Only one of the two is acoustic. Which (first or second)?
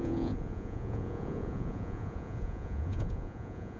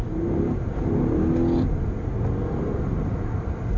second